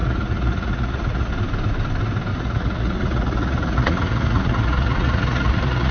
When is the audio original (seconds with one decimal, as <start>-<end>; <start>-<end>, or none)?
1.3-2.3